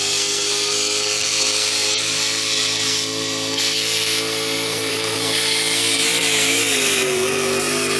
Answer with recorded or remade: remade